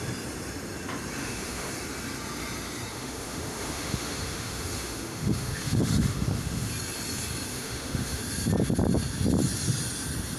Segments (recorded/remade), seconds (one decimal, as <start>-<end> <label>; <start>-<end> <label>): 0.0-1.2 recorded; 1.2-1.7 remade; 1.7-2.9 recorded; 2.9-6.7 remade; 6.7-7.5 recorded; 7.5-8.2 remade; 8.2-10.4 recorded